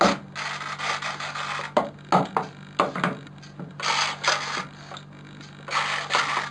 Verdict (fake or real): real